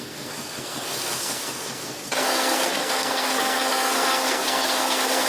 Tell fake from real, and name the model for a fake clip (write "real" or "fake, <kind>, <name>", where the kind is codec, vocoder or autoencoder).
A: fake, codec, SNAC